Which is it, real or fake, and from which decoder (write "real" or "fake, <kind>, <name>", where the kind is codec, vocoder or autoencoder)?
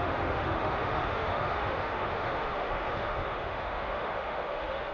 fake, autoencoder, DAC-VAE